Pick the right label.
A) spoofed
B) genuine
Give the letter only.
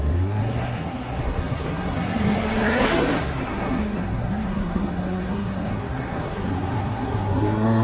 A